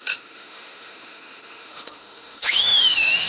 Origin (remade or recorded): remade